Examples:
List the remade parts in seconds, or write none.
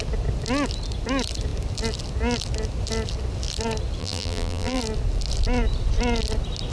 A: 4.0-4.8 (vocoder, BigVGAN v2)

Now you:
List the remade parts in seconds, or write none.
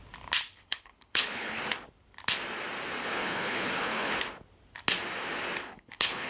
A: 0.5-1.6 (codec, HILCodec); 3.0-4.1; 5.6-6.3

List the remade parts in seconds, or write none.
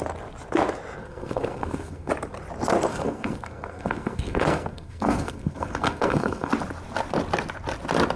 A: 1.0-2.1 (codec, SNAC); 2.9-6.5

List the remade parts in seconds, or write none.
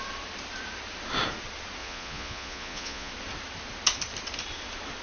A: 1.8-3.1 (vocoder, Vocos)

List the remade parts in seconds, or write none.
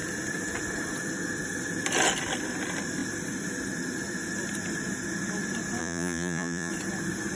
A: 5.8-6.7 (vocoder, Vocos)